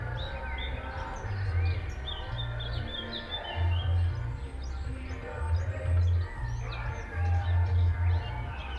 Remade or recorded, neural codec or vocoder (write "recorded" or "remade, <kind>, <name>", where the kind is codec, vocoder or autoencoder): recorded